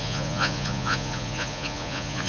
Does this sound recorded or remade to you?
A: remade